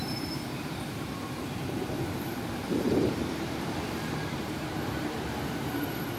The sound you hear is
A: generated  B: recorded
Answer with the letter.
A